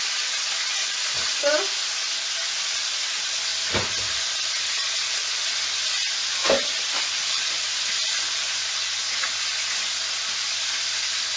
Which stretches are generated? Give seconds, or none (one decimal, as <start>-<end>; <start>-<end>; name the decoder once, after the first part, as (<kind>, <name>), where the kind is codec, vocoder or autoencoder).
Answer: 0.8-1.6 (vocoder, WaveNeXt)